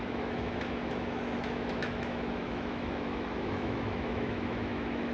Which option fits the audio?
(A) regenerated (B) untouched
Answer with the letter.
A